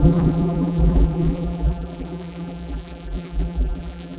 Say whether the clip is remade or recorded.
remade